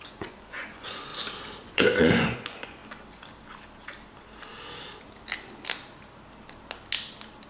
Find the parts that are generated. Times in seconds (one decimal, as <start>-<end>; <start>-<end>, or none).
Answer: 0.0-1.1; 1.6-2.8